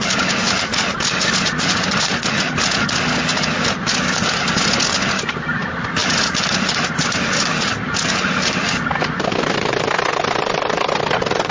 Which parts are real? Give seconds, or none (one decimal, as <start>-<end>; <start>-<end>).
0.0-11.5

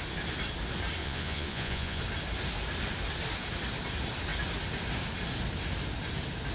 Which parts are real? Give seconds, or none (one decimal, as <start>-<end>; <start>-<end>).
0.0-1.0; 2.0-6.5

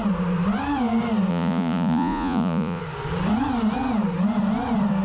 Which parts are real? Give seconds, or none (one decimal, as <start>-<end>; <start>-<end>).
0.0-1.3; 2.8-5.0

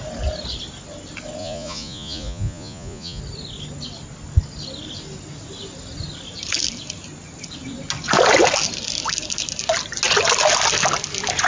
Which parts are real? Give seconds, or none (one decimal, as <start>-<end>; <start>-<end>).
0.0-1.4; 3.2-11.5

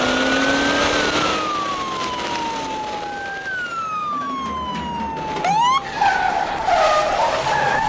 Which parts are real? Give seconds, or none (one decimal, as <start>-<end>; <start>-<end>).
0.0-7.9

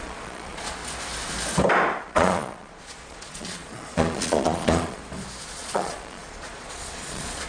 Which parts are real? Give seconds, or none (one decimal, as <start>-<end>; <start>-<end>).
0.8-2.0; 5.0-5.5

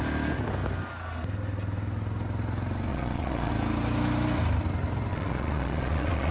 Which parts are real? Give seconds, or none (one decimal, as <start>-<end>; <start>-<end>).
0.0-2.9; 3.5-5.1

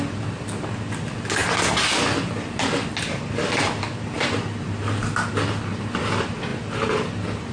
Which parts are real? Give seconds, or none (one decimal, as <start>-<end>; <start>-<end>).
0.0-7.5